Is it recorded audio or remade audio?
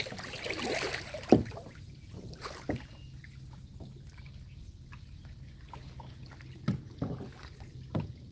recorded